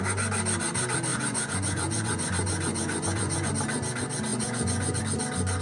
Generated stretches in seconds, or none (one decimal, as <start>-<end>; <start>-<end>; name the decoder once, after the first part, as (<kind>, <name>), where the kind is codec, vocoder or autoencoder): 1.1-3.5 (vocoder, Vocos); 4.3-5.0